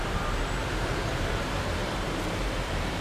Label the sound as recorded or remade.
remade